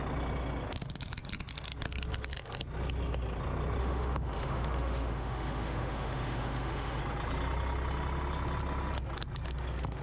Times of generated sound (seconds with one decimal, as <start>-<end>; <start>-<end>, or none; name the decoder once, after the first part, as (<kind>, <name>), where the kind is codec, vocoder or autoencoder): 3.8-7.0 (autoencoder, DAC-VAE)